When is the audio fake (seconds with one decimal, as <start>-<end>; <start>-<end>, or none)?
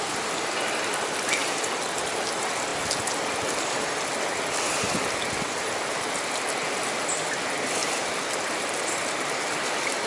none